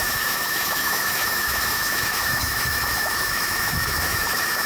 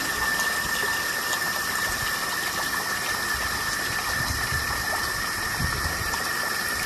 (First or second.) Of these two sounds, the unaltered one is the second